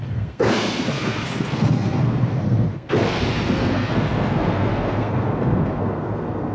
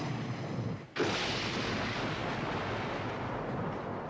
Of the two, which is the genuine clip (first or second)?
second